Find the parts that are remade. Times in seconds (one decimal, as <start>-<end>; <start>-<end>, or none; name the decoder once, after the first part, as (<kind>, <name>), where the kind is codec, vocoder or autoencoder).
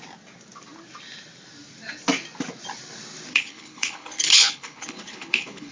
3.3-5.7 (codec, HILCodec)